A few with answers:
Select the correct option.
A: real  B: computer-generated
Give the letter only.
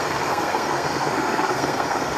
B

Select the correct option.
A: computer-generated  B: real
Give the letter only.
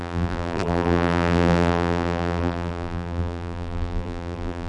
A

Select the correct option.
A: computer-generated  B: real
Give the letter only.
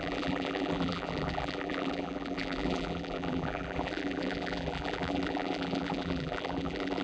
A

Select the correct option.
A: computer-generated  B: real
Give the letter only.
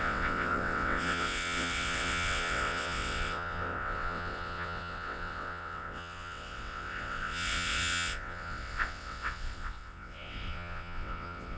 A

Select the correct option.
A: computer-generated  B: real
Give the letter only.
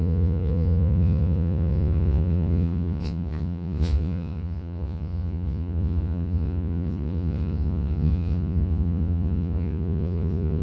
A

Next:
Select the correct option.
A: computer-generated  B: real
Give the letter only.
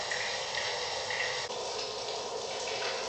B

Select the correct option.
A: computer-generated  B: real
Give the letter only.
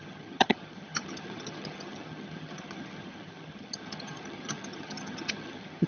A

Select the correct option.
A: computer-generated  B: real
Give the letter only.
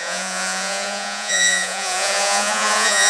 A